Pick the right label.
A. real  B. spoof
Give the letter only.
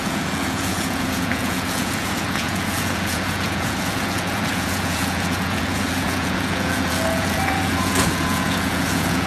B